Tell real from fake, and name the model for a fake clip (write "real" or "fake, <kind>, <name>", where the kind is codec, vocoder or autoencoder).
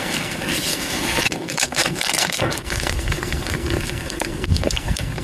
fake, codec, SNAC